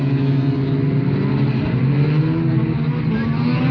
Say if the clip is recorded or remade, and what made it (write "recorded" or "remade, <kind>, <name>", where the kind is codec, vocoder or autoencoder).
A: recorded